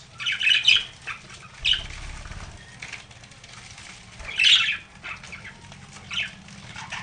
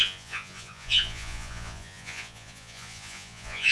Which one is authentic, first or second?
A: first